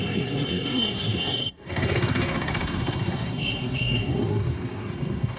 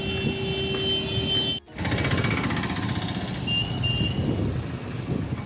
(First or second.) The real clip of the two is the second